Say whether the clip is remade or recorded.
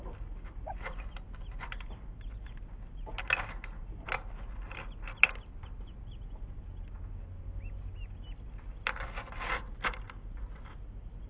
recorded